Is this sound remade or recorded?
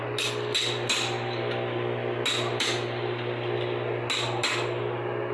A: recorded